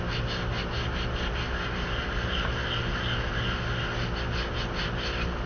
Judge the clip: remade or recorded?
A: recorded